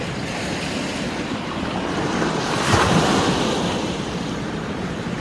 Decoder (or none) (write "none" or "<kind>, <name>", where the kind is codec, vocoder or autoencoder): vocoder, BigVGAN v2